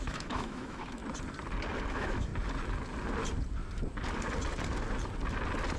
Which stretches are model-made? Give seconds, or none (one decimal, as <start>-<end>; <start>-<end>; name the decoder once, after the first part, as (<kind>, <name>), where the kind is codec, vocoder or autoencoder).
0.0-1.0 (autoencoder, DAC-VAE); 1.9-2.3